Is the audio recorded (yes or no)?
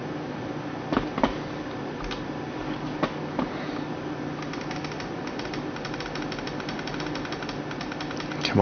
yes